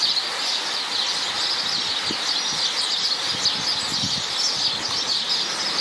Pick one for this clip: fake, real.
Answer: real